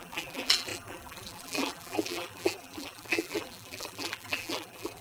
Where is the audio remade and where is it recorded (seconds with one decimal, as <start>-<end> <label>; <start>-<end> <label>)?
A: 0.0-5.0 remade